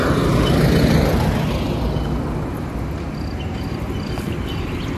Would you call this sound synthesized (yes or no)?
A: no